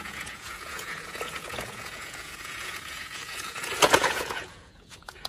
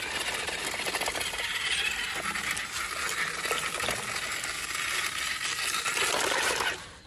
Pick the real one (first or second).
second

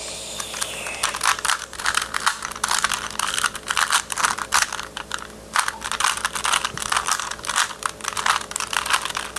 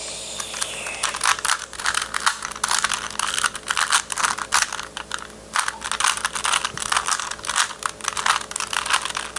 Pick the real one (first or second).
second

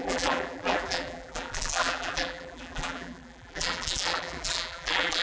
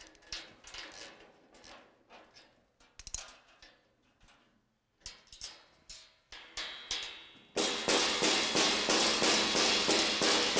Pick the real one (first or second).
second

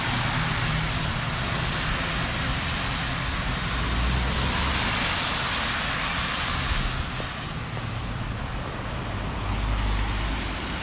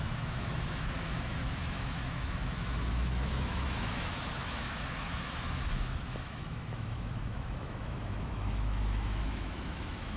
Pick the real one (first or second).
first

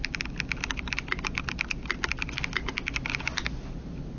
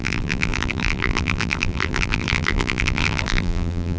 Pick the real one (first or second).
first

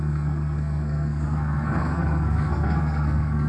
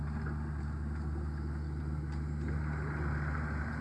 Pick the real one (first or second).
second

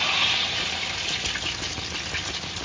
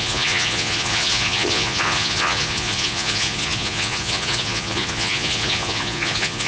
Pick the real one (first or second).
first